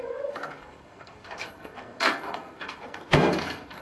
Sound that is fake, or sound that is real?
fake